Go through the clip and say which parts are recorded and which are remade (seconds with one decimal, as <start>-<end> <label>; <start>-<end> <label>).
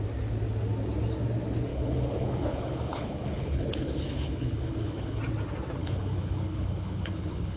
0.0-1.7 recorded; 1.7-5.2 remade; 5.2-5.8 recorded; 5.8-7.6 remade